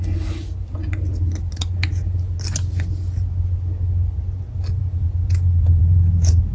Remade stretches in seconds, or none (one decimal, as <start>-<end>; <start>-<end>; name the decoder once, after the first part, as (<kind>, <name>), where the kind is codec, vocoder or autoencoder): none